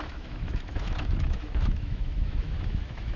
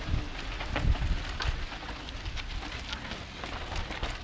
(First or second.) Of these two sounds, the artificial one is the first